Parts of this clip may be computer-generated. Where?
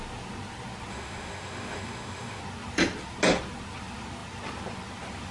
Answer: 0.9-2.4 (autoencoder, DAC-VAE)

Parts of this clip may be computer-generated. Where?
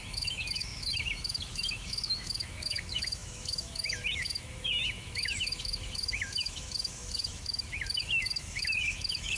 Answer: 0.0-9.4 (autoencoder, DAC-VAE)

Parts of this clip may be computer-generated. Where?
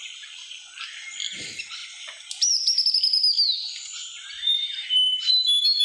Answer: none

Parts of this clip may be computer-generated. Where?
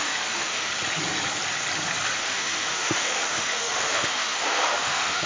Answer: 0.0-0.7 (autoencoder, DAC-VAE); 2.2-5.3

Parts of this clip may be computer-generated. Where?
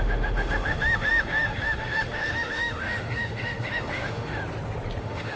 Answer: 0.0-4.4 (autoencoder, DAC-VAE); 5.0-5.4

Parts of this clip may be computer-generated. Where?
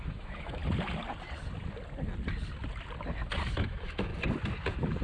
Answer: 0.0-0.6 (autoencoder, DAC-VAE); 3.6-4.1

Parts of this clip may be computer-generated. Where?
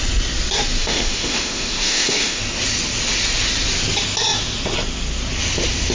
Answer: 0.8-2.4 (autoencoder, DAC-VAE)